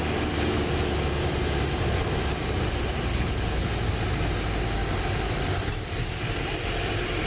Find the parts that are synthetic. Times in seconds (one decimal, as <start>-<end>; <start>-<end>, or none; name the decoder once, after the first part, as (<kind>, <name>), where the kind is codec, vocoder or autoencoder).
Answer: 3.1-3.7 (codec, HILCodec)